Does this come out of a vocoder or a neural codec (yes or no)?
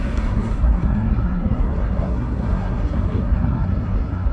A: yes